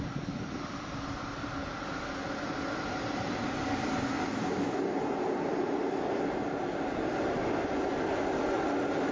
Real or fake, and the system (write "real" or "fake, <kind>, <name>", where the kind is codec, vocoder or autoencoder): real